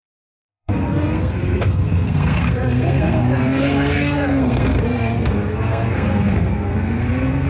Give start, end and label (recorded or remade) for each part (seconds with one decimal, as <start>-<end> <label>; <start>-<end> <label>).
0.0-7.5 remade